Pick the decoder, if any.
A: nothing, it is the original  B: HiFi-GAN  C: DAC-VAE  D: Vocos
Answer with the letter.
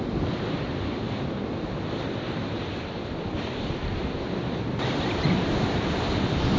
A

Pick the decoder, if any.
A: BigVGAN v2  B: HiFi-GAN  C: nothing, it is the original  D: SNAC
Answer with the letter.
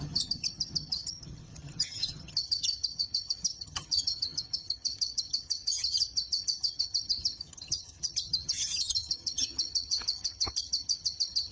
B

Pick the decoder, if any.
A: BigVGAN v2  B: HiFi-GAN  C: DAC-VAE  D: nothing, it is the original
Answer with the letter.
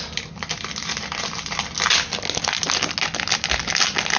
D